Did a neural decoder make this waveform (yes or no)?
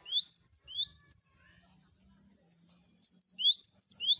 no